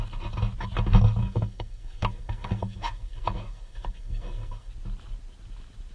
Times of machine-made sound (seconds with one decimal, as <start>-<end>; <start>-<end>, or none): 1.2-4.7